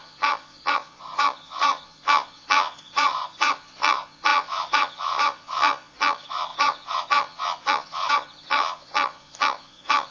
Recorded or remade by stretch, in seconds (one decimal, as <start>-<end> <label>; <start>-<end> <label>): 0.0-10.1 remade